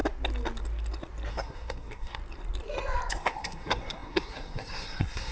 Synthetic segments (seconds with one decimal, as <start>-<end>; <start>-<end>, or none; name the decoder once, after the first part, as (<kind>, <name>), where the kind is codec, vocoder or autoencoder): 1.3-2.2 (codec, SNAC); 3.1-5.3